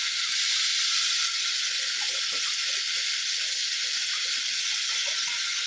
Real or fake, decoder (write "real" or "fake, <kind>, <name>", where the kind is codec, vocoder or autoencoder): real